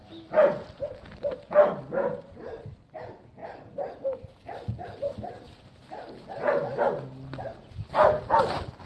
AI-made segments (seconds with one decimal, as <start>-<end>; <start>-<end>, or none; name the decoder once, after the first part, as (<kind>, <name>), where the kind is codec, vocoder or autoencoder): none